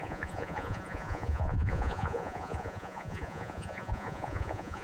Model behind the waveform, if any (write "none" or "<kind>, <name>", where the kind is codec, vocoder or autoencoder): vocoder, Vocos